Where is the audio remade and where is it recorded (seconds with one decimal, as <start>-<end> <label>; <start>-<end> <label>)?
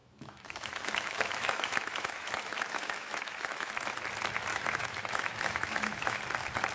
0.0-3.7 remade; 3.7-4.5 recorded; 4.5-6.2 remade; 6.2-6.7 recorded